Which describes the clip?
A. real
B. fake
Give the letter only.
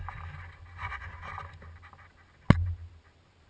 A